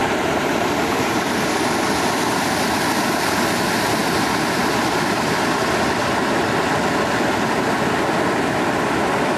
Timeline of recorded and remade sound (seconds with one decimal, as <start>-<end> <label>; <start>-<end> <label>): 0.0-1.5 remade; 1.5-9.4 recorded